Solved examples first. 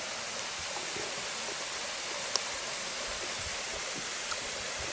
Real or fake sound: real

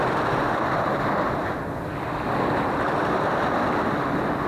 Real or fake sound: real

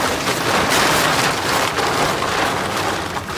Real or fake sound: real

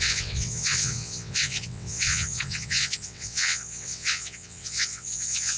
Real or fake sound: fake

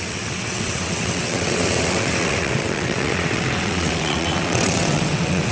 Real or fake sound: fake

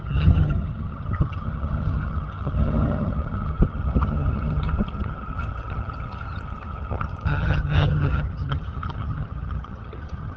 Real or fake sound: fake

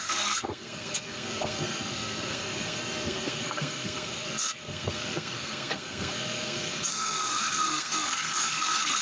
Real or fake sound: fake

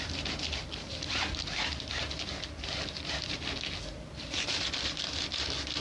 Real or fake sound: real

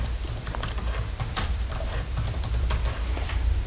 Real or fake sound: fake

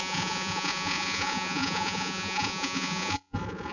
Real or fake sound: fake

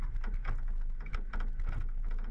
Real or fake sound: real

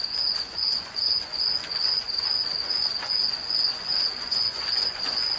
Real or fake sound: fake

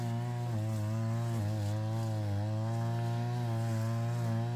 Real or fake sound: real